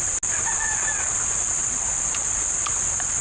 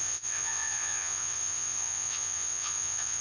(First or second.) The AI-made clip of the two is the second